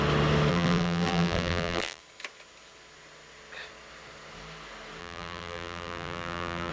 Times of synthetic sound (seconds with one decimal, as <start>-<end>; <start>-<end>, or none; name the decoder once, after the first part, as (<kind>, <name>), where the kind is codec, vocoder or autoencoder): 0.5-2.0 (vocoder, BigVGAN v2); 5.0-6.7